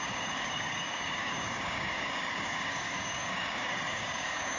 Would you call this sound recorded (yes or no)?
no